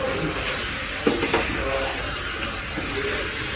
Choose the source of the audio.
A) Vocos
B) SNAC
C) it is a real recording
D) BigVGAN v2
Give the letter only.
C